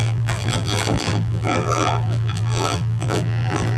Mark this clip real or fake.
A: fake